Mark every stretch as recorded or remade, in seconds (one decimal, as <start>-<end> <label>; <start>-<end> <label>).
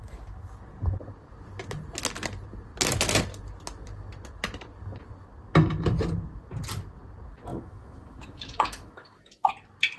0.0-7.5 recorded; 7.5-9.5 remade; 9.5-10.0 recorded